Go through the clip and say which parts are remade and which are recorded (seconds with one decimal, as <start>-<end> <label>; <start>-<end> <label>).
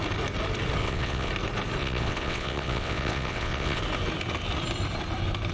0.0-0.8 recorded; 0.8-1.3 remade; 1.3-1.8 recorded; 1.8-3.8 remade; 3.8-5.5 recorded